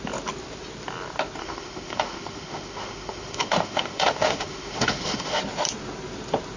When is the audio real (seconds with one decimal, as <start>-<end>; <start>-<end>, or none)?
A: 0.0-1.4; 5.4-6.6